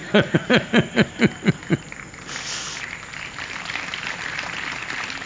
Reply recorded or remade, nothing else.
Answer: recorded